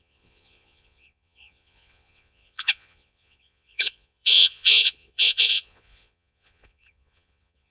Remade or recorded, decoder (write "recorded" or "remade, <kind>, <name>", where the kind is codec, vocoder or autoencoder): remade, vocoder, Vocos